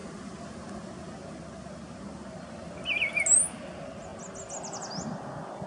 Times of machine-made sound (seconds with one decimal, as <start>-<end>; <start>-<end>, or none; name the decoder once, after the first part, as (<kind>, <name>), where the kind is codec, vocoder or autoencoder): none